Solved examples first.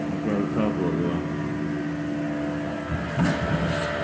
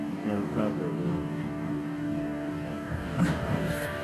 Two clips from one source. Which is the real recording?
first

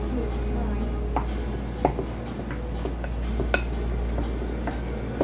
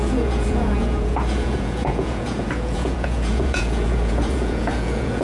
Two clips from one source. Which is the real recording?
first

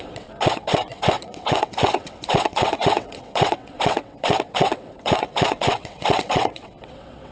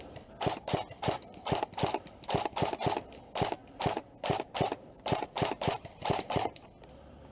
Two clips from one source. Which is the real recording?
second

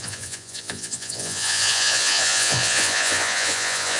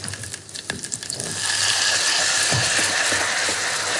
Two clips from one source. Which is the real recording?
second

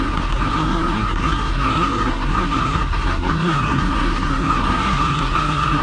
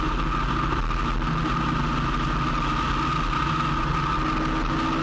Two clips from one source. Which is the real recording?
second